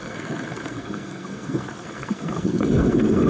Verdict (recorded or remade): remade